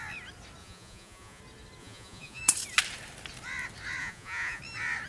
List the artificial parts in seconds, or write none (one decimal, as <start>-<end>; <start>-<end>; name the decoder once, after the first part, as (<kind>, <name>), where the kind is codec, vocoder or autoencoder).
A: 0.6-1.4 (vocoder, Vocos); 1.8-2.4; 4.0-4.6